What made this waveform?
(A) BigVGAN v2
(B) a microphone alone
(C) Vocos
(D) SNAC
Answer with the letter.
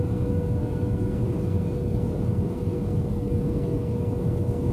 D